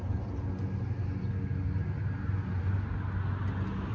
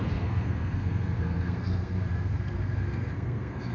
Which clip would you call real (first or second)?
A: first